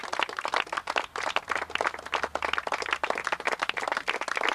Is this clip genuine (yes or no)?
yes